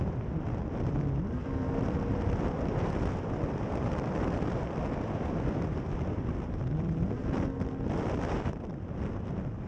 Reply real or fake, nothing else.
fake